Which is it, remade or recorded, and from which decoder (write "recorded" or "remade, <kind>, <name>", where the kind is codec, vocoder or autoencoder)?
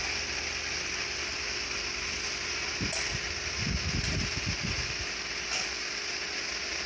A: recorded